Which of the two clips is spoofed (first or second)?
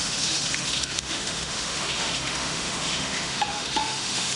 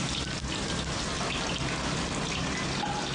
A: first